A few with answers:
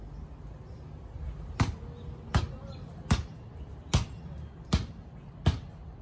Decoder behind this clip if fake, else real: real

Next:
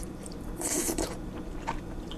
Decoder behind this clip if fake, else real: fake, vocoder, BigVGAN v2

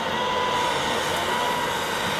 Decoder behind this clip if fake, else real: real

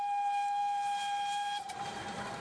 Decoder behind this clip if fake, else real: real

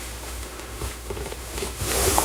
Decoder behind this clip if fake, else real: fake, autoencoder, DAC-VAE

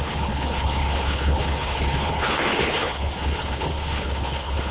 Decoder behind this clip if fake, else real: fake, codec, HILCodec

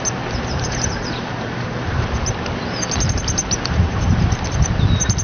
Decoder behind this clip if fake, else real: fake, vocoder, BigVGAN v2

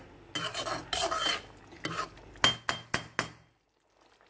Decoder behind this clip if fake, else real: real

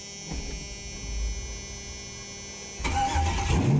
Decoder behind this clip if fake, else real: real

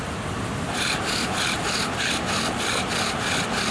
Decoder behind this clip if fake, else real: real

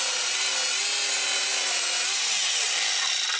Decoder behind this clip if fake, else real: real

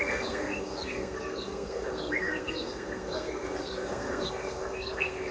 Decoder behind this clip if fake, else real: fake, codec, SNAC